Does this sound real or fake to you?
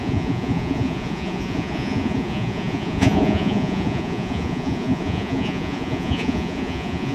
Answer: fake